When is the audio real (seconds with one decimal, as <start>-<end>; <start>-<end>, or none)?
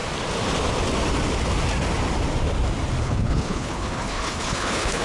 0.0-3.0